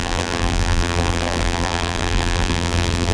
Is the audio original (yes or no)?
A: no